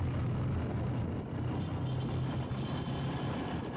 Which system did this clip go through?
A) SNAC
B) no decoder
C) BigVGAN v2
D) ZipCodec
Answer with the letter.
B